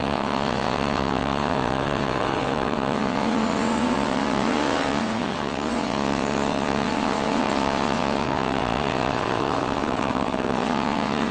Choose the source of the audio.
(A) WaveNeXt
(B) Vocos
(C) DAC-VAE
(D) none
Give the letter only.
A